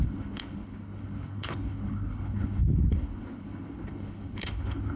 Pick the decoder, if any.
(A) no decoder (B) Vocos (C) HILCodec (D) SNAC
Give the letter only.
C